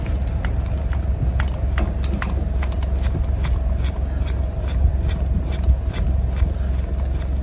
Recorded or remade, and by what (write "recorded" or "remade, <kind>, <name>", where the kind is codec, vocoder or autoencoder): recorded